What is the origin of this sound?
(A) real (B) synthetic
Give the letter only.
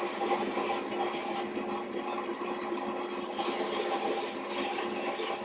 A